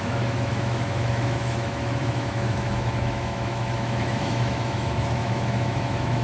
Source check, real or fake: fake